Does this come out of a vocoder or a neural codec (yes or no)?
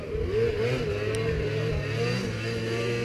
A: no